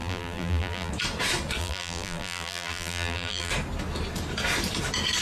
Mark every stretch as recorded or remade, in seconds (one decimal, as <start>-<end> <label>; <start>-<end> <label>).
0.0-0.9 remade; 0.9-1.6 recorded; 1.6-3.5 remade; 3.5-5.2 recorded